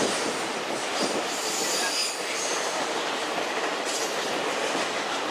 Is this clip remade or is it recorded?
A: recorded